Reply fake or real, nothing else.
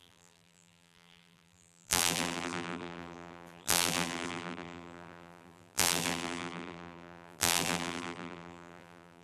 fake